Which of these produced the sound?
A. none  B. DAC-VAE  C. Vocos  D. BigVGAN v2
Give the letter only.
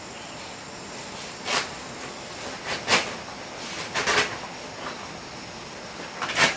A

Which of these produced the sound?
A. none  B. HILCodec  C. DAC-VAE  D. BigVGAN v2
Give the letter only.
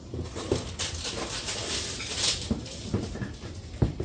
A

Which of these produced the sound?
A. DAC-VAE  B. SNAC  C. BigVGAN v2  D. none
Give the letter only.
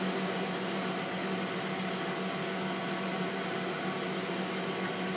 D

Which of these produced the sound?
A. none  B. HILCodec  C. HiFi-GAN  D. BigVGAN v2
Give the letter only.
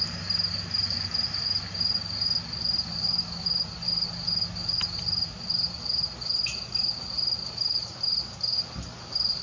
A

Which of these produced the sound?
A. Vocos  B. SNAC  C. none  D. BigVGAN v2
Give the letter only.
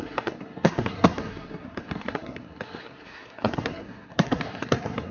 B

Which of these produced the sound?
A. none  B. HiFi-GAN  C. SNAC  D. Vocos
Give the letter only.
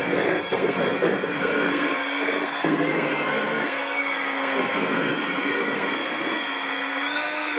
C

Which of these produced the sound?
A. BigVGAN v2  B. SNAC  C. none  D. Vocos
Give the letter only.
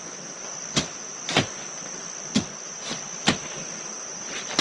C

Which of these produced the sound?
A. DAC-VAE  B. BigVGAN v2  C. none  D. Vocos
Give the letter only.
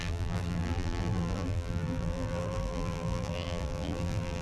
B